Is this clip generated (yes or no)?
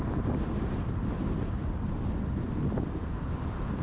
yes